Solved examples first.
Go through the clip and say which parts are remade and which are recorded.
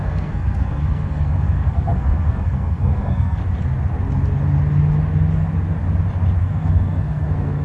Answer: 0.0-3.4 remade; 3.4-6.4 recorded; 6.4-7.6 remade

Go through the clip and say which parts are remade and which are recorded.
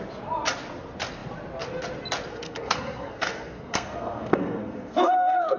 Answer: 0.0-2.3 recorded; 2.3-5.6 remade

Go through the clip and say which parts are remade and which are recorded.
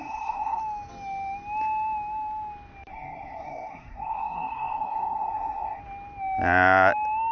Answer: 0.0-0.6 remade; 0.6-2.9 recorded; 2.9-5.8 remade; 5.8-7.3 recorded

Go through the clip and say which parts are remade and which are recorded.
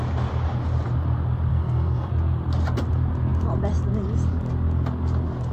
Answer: 0.0-1.5 recorded; 1.5-2.1 remade; 2.1-5.5 recorded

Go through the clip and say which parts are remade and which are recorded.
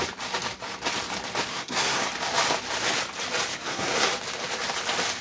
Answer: 0.0-1.5 recorded; 1.5-2.1 remade; 2.1-3.5 recorded; 3.5-4.1 remade; 4.1-5.2 recorded